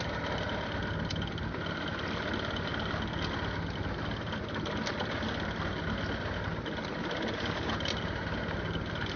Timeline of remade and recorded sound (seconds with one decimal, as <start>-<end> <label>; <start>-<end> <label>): 0.0-9.2 recorded